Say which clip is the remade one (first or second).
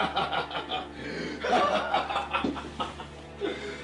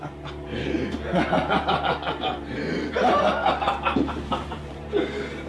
second